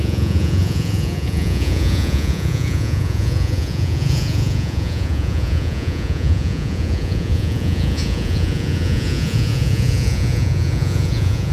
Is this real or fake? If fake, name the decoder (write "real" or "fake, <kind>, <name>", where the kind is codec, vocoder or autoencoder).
fake, vocoder, Vocos